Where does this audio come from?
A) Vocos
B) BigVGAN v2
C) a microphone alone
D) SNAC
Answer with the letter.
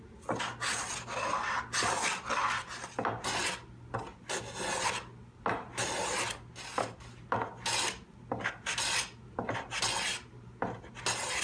C